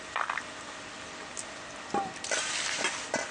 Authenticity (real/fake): fake